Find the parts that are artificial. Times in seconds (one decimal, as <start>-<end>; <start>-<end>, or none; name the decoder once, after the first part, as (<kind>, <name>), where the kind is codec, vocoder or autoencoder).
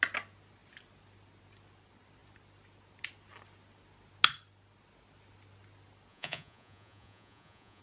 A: 6.1-7.8 (vocoder, Vocos)